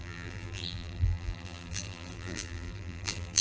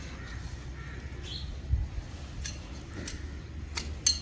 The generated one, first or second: first